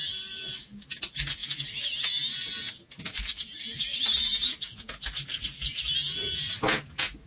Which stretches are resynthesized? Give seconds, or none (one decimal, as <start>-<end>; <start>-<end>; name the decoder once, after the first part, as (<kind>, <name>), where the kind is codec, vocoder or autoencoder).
none